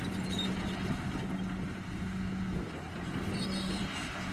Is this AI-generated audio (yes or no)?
no